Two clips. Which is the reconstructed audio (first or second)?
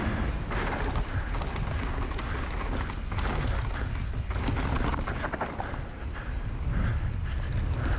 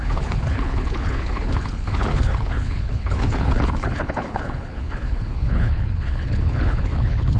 second